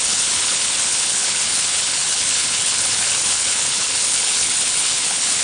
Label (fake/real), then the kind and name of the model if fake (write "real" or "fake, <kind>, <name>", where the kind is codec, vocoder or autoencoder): fake, codec, HILCodec